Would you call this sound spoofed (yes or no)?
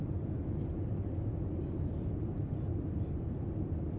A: no